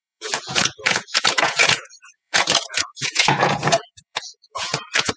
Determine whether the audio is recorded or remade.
remade